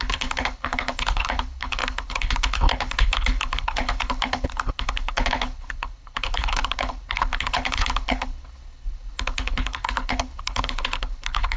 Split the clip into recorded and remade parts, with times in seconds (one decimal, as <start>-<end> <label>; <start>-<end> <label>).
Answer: 0.0-11.6 remade